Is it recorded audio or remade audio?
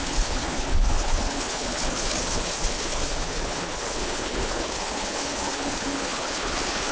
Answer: remade